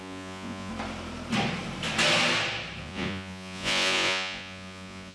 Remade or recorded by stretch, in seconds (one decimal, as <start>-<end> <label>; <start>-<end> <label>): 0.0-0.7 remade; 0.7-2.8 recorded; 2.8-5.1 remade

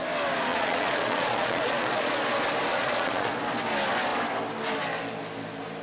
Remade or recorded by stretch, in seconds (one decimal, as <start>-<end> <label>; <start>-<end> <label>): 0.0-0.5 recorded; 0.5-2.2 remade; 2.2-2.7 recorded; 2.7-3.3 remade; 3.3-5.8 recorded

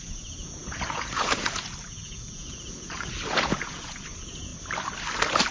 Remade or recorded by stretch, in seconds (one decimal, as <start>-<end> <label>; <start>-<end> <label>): 0.0-4.5 remade; 4.5-5.5 recorded